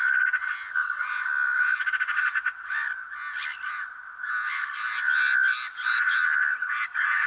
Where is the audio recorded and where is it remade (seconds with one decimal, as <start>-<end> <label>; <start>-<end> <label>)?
0.0-7.3 recorded